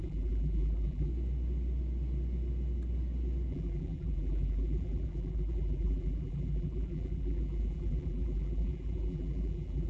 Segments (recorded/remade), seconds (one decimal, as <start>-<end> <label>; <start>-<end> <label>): 0.0-1.1 remade; 1.1-3.5 recorded; 3.5-9.9 remade